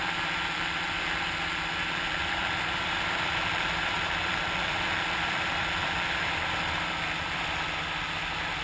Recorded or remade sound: remade